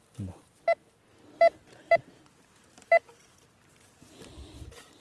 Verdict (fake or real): real